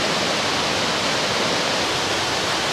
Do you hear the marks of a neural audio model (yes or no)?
no